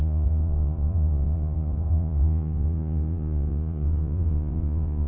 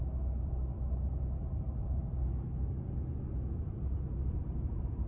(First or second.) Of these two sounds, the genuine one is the second